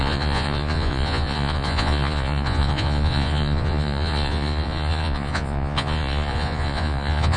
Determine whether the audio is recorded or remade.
remade